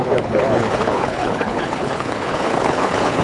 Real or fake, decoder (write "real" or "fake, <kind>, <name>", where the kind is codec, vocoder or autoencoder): fake, codec, HILCodec